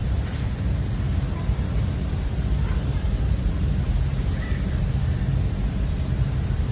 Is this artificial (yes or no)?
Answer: yes